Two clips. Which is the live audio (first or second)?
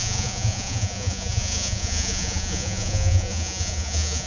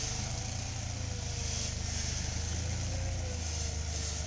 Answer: second